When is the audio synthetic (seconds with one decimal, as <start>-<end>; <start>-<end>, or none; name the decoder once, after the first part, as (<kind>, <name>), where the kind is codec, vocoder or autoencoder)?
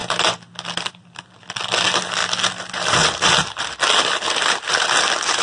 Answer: none